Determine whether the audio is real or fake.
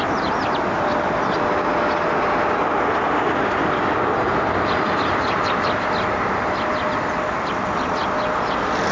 real